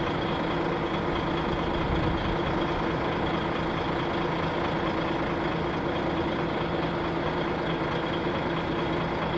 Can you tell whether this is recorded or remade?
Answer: recorded